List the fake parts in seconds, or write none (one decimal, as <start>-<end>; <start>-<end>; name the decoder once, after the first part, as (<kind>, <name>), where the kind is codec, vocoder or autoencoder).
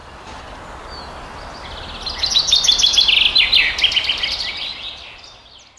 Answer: none